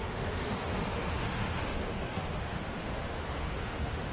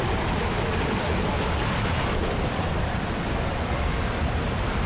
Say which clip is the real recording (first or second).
second